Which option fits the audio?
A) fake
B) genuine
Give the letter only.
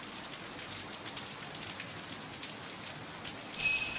B